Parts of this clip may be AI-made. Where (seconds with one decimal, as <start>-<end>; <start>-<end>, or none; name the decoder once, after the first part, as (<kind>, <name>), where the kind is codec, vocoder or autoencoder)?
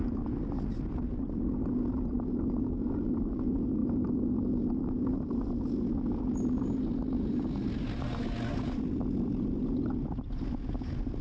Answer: none